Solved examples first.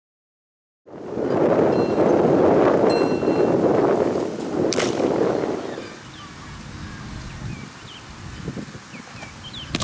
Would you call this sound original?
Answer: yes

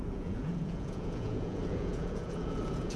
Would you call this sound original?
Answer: no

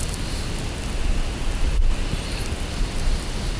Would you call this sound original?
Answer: yes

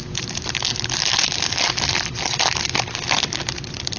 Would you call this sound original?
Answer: no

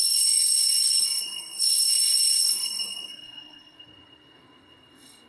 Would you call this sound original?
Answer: no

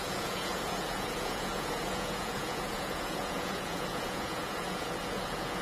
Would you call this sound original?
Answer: no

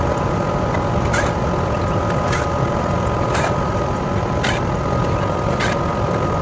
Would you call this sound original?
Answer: no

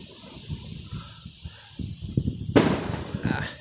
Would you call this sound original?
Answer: yes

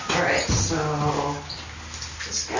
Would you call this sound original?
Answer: yes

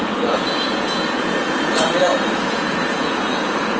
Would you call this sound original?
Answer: no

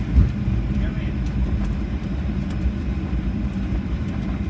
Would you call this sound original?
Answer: yes